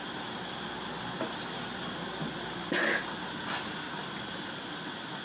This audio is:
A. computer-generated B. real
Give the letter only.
B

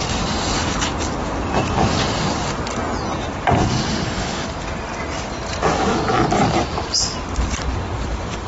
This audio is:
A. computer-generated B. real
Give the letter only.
B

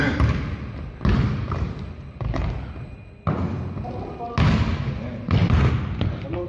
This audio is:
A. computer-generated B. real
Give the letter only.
B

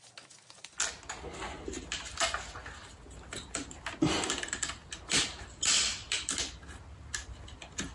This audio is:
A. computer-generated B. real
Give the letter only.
B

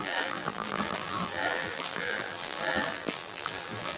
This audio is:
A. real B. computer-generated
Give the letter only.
B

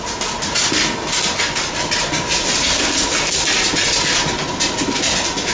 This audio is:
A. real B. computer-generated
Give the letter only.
A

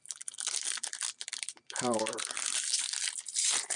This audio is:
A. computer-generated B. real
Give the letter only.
A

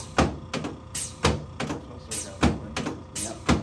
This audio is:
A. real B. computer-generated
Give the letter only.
A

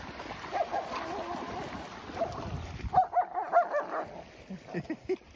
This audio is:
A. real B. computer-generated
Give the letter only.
A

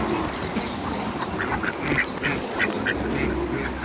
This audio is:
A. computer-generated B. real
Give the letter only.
B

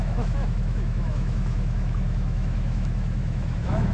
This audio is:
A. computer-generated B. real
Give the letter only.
A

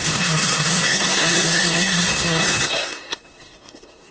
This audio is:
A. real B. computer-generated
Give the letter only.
B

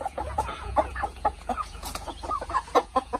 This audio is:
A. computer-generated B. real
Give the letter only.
A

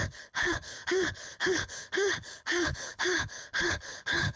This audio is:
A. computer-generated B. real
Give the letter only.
A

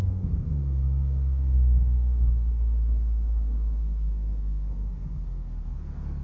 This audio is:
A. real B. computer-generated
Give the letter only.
B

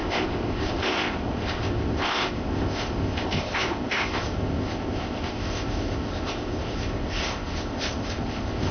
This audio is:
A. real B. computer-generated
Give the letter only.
B